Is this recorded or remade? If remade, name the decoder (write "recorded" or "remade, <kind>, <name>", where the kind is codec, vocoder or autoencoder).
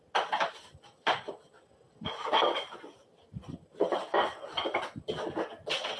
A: recorded